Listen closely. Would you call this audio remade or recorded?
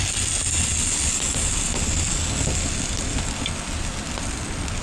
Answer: recorded